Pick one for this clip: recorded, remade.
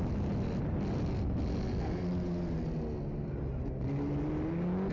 recorded